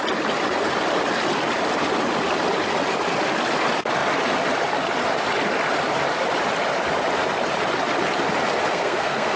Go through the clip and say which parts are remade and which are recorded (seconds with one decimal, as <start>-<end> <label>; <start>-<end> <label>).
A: 0.0-8.7 recorded; 8.7-9.4 remade